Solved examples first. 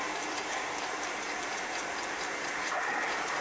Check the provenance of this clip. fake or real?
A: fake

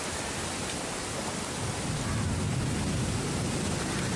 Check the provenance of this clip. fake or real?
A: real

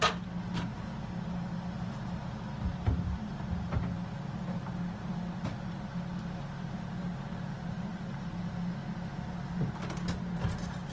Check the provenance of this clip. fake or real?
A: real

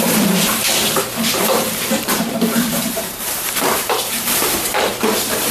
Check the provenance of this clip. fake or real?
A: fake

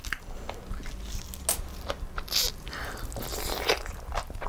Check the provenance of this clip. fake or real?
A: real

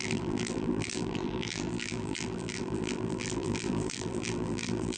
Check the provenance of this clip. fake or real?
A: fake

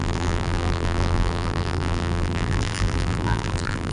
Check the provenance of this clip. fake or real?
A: fake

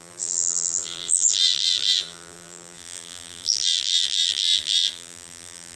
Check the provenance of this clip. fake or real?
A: fake